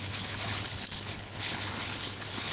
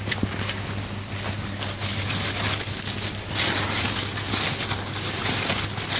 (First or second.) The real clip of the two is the second